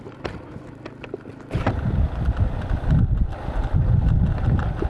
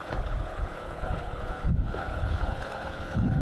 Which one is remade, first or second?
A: second